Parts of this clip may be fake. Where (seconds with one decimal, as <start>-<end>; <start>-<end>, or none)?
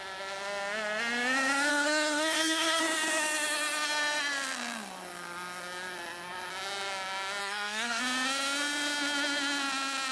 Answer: 1.7-2.8; 7.4-8.0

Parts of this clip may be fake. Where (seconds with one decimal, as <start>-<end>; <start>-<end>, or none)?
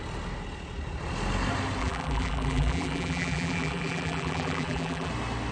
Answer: 1.8-5.1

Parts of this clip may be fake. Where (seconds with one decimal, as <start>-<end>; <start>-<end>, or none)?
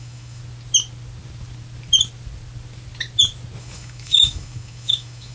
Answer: 0.0-0.4; 3.6-5.3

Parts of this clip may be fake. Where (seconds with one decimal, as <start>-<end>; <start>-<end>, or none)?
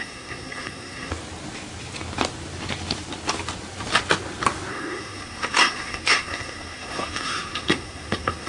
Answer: 0.0-1.1; 4.7-8.5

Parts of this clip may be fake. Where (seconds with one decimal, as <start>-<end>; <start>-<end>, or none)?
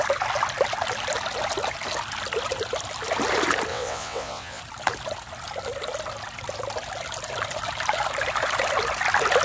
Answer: 3.7-4.6